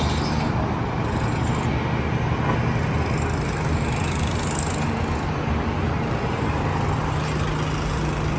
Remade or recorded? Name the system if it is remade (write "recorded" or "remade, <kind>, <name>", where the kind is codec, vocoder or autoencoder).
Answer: recorded